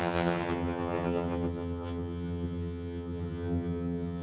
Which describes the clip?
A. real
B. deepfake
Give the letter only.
B